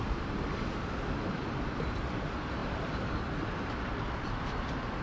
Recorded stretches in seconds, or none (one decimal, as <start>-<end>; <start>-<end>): 0.0-5.0